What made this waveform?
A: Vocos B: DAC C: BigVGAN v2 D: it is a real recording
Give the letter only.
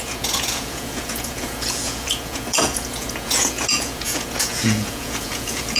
A